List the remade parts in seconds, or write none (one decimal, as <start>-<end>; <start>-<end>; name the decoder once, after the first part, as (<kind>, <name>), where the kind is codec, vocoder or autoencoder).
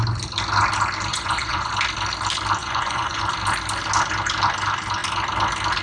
1.1-1.7 (vocoder, Vocos); 2.6-3.2